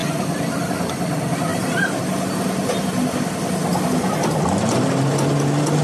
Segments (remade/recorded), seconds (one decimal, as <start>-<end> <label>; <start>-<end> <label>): 0.0-0.7 remade; 0.7-1.5 recorded; 1.5-2.0 remade; 2.0-3.7 recorded; 3.7-4.4 remade; 4.4-5.8 recorded